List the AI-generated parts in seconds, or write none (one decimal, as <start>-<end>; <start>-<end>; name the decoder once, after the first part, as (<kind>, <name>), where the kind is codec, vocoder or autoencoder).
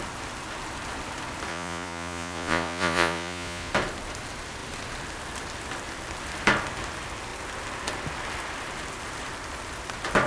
1.5-3.7 (vocoder, Vocos)